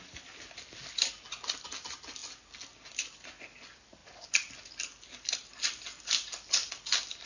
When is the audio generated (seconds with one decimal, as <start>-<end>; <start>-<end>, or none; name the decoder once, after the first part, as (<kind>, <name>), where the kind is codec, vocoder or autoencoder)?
none